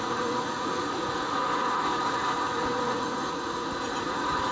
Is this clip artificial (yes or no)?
yes